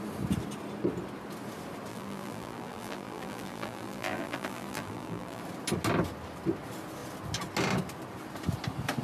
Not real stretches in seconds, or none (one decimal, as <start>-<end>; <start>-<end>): 1.9-5.4